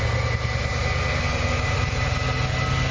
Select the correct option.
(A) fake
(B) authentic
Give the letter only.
B